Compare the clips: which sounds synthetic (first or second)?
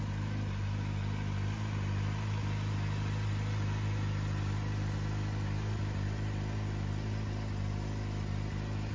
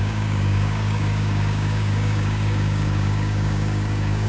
second